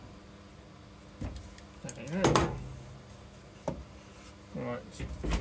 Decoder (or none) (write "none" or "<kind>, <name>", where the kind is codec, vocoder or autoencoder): none